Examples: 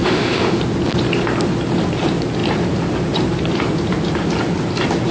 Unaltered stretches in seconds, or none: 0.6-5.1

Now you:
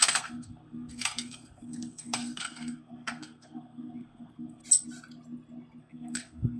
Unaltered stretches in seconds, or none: 4.6-5.8

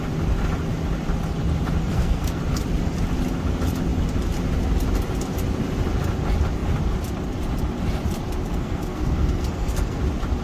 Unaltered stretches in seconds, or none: 0.0-1.8; 2.4-8.5; 10.0-10.4

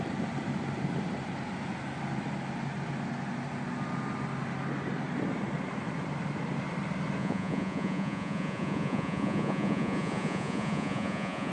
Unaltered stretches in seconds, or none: 0.0-7.2

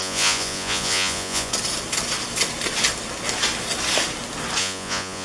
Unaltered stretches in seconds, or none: 1.5-4.6

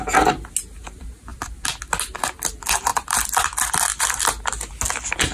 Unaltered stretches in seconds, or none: 0.0-2.9; 4.2-5.3